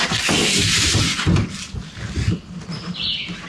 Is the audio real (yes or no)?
yes